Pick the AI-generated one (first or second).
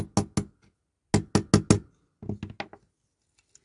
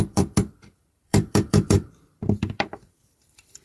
second